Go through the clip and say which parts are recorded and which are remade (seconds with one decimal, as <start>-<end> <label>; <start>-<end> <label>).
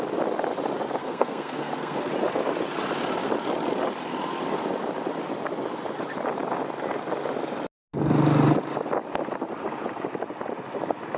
0.0-1.0 recorded; 1.0-2.1 remade; 2.1-11.2 recorded